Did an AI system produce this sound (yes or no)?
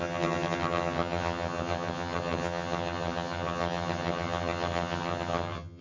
yes